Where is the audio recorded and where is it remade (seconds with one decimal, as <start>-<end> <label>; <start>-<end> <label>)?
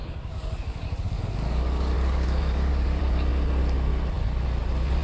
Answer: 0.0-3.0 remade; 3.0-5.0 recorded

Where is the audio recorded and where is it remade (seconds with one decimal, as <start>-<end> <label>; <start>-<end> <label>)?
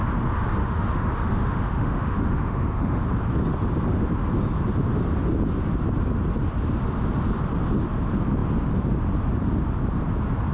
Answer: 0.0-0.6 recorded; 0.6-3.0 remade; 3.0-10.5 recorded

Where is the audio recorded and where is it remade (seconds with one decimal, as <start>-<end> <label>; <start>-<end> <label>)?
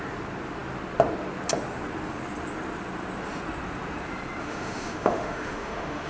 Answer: 0.0-4.4 recorded; 4.4-6.1 remade